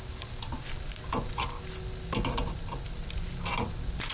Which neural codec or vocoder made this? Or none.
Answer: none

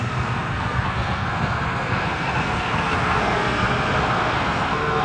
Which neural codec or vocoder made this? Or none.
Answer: codec, SNAC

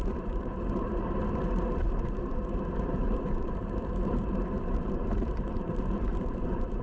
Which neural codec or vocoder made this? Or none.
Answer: vocoder, BigVGAN v2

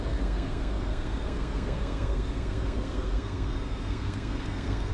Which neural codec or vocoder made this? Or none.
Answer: codec, SNAC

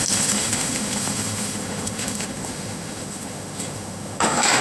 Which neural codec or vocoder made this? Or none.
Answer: autoencoder, DAC-VAE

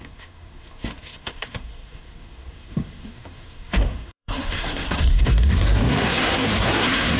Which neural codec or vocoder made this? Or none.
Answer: codec, SNAC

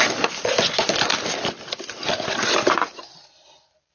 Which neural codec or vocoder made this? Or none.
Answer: none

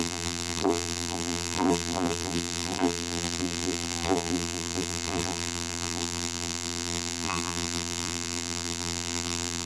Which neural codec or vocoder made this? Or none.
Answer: vocoder, BigVGAN v2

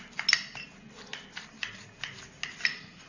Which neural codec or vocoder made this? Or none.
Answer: none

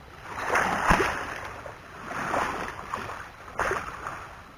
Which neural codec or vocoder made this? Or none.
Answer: none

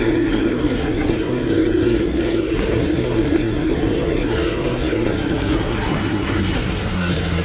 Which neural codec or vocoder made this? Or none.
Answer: codec, SNAC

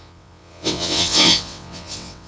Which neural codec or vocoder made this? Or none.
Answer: vocoder, WaveNeXt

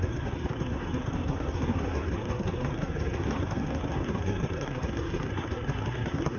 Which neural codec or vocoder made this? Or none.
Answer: codec, SNAC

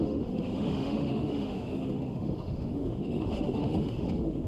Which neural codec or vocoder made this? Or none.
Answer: autoencoder, DAC-VAE